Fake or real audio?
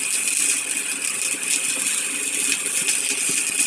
real